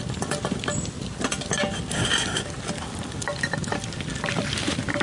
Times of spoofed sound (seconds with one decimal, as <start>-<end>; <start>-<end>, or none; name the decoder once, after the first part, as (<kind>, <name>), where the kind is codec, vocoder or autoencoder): none